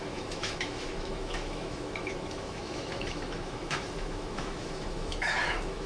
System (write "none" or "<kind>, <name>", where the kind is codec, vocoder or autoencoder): autoencoder, DAC-VAE